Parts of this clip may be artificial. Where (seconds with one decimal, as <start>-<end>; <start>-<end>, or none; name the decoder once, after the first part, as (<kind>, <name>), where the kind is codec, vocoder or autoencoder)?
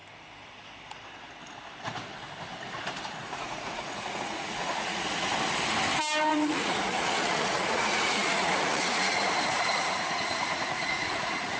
3.2-5.3 (vocoder, Vocos); 6.3-11.6